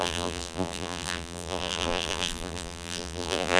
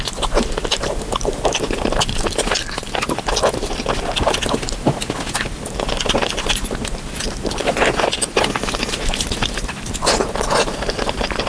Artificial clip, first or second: first